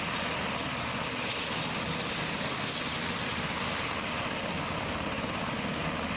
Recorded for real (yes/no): yes